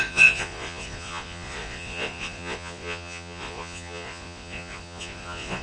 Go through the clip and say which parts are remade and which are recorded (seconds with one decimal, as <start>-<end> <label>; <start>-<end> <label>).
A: 0.0-5.6 remade

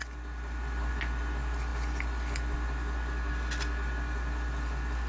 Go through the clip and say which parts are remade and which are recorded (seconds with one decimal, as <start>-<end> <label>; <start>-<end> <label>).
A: 0.0-5.1 recorded

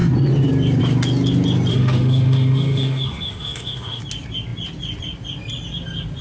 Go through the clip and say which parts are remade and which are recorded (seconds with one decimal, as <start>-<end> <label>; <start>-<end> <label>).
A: 0.0-1.7 recorded; 1.7-4.0 remade; 4.0-6.2 recorded